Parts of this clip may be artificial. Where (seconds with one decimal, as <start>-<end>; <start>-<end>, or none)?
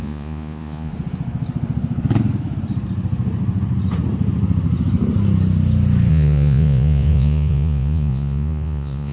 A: 0.0-0.9; 6.1-9.1